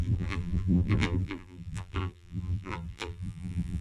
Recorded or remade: remade